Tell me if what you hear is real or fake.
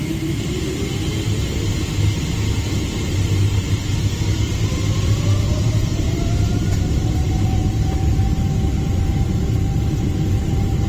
fake